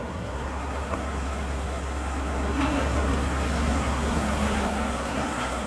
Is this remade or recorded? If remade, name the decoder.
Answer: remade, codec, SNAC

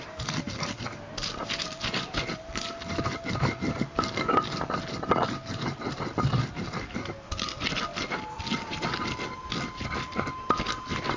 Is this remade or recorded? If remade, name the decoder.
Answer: recorded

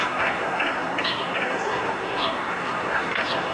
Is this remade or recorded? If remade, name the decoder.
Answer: remade, codec, SNAC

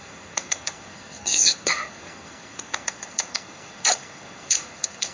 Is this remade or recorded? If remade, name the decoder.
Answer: remade, codec, SNAC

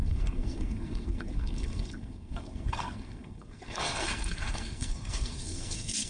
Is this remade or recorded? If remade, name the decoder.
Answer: remade, codec, SNAC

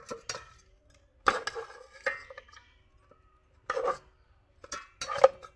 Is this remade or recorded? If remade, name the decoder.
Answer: recorded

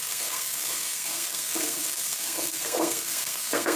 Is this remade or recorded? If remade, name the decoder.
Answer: remade, codec, SNAC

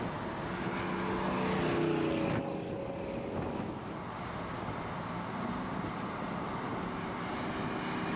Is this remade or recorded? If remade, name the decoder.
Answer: recorded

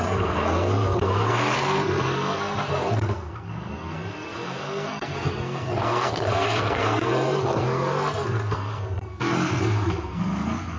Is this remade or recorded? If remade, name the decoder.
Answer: remade, codec, SNAC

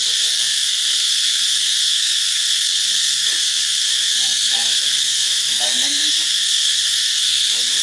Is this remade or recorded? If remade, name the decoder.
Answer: remade, codec, SNAC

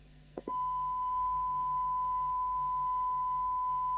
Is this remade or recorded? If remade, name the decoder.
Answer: remade, codec, SNAC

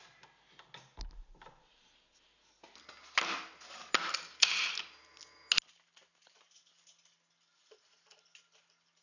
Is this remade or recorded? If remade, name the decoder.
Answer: recorded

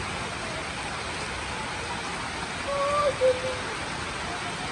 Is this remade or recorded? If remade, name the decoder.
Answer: recorded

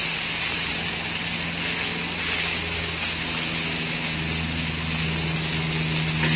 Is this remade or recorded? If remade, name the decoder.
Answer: recorded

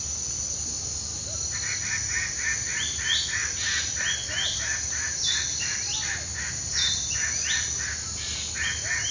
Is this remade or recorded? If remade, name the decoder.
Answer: recorded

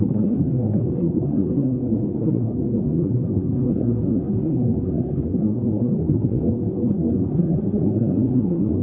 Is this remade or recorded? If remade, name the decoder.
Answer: remade, codec, SNAC